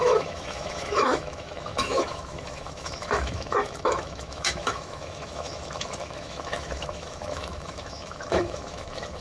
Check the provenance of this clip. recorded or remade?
remade